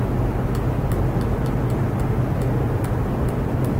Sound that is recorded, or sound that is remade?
recorded